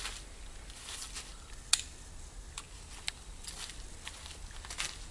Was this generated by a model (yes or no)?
no